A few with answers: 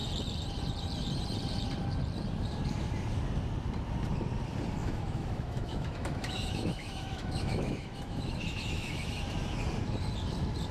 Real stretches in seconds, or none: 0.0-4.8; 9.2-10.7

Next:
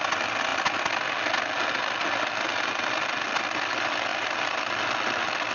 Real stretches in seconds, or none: 0.0-5.5

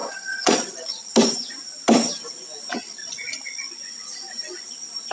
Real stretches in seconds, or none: 1.1-2.7; 3.8-5.1

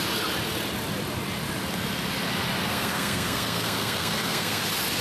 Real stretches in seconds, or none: 0.0-2.7; 4.6-5.0